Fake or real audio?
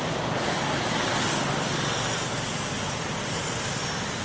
real